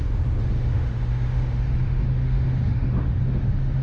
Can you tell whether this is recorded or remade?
remade